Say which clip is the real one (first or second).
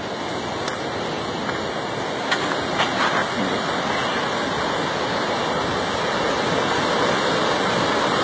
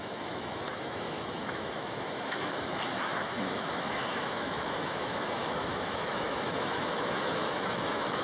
first